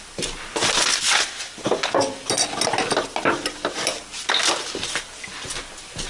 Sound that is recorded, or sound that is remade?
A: recorded